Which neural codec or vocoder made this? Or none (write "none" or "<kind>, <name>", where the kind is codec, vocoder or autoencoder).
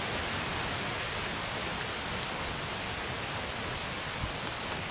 none